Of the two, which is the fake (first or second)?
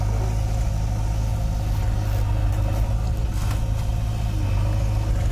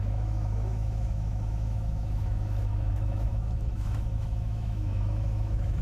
second